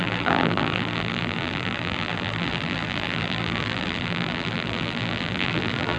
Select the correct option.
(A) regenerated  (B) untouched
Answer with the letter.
A